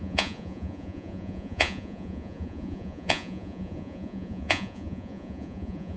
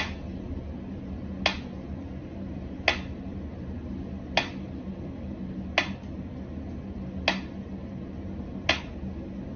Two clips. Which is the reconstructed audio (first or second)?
first